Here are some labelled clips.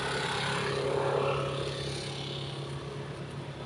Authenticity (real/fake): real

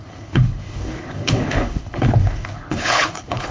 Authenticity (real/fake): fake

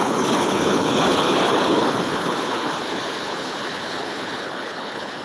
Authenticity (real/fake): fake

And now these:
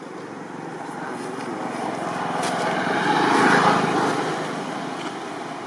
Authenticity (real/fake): real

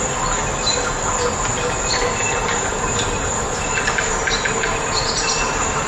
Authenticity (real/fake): real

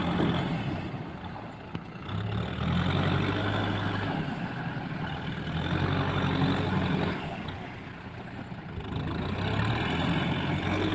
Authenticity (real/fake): real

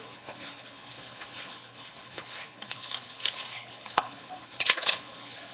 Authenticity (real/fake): fake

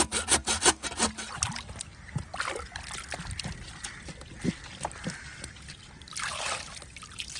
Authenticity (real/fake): real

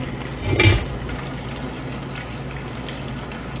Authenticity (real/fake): real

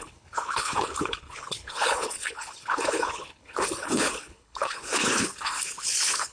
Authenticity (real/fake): fake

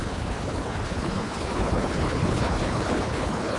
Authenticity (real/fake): fake